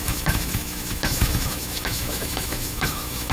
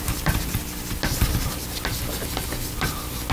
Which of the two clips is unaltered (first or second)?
second